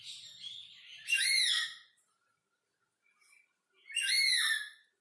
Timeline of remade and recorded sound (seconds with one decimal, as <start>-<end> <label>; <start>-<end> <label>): 0.0-5.0 recorded